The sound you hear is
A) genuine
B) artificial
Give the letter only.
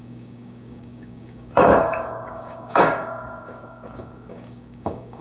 B